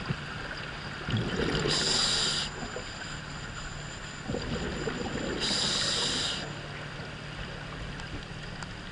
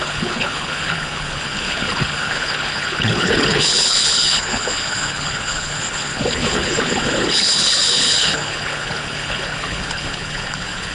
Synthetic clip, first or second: second